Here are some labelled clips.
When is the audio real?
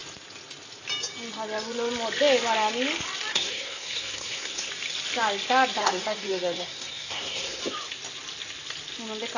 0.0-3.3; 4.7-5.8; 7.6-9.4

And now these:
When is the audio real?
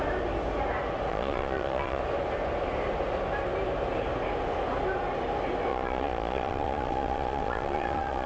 0.0-1.1; 2.0-5.7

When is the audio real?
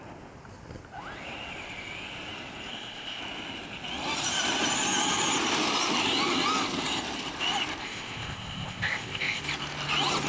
0.0-2.7; 3.2-7.8; 9.4-10.3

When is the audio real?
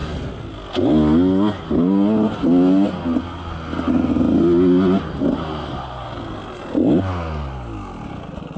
0.0-8.6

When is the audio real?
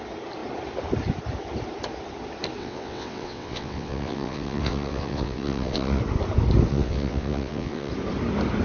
0.0-2.6; 6.0-6.7; 7.9-8.6